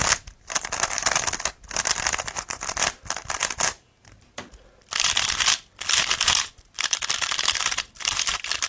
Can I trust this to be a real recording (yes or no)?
yes